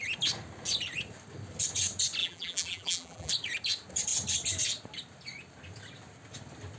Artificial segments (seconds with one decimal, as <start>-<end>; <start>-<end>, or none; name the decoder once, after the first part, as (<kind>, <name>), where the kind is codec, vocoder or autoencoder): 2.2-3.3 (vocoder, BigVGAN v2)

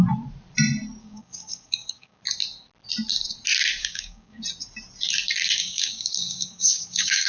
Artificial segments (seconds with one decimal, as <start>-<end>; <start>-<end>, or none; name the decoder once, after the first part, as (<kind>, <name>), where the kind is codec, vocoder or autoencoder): 1.0-2.2 (codec, DAC); 3.8-4.4; 5.6-7.3

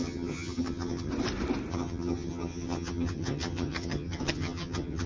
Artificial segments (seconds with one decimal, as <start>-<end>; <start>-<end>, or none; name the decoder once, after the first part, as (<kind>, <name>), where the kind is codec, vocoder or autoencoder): 0.0-1.1 (vocoder, HiFi-GAN); 1.7-5.1